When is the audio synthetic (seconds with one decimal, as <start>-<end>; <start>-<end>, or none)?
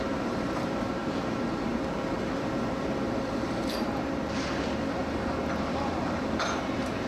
0.0-5.0; 5.9-7.1